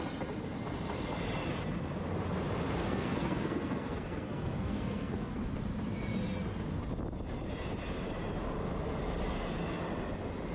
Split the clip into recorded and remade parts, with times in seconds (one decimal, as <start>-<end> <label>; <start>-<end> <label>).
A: 0.0-2.8 recorded; 2.8-5.4 remade; 5.4-10.5 recorded